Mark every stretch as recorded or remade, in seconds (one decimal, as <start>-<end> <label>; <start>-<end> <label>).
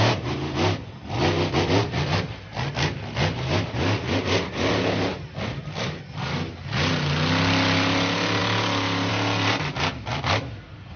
0.0-11.0 recorded